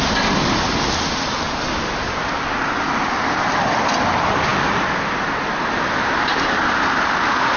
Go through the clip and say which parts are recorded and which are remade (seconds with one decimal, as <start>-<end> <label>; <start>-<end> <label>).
0.0-7.6 recorded